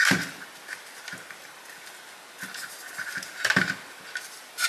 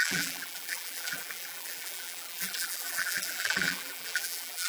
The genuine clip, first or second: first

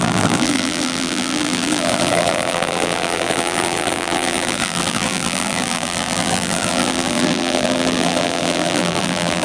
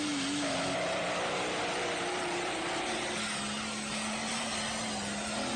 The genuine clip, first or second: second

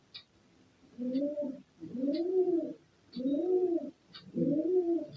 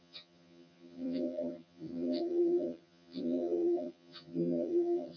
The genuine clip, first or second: first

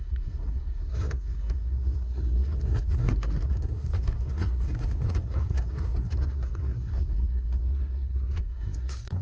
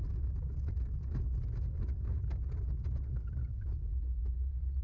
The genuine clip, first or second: second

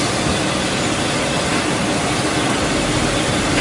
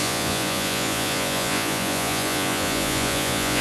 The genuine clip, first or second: first